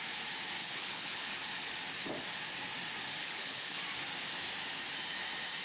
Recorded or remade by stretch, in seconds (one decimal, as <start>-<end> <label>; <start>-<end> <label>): 0.0-0.6 recorded; 0.6-1.4 remade; 1.4-3.2 recorded; 3.2-3.8 remade; 3.8-5.6 recorded

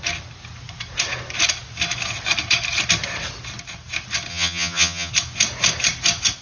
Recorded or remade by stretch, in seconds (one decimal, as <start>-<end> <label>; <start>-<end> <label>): 0.0-4.3 recorded; 4.3-5.1 remade; 5.1-6.4 recorded

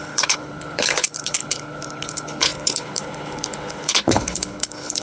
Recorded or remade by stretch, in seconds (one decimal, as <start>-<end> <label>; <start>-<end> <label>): 0.0-5.0 remade